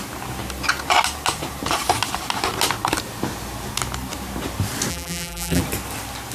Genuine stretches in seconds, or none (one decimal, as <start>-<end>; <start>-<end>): 0.0-4.9; 5.6-6.3